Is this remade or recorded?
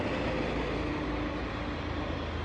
recorded